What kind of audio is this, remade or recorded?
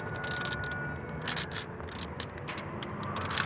recorded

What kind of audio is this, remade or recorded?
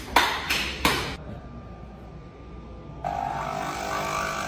remade